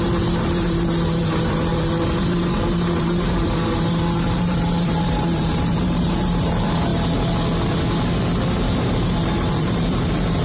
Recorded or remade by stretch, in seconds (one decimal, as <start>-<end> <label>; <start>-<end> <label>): 0.0-6.9 remade; 6.9-8.5 recorded; 8.5-10.4 remade